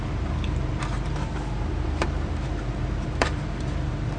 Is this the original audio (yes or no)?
no